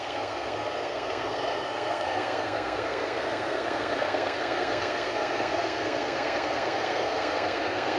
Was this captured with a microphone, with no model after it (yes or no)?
no